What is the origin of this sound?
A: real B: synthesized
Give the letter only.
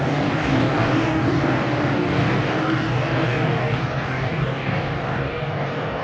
B